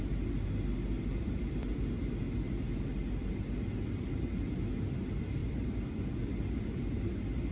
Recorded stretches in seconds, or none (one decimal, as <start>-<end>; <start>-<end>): 0.0-7.5